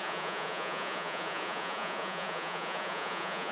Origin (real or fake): fake